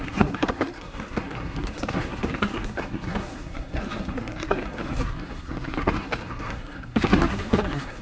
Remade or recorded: remade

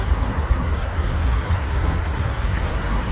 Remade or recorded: remade